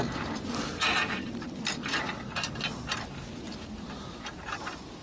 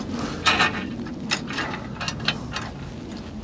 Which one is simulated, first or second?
first